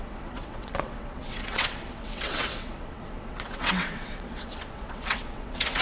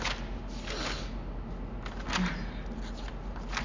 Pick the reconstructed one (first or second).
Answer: first